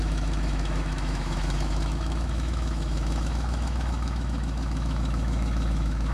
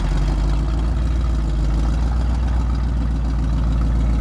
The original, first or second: second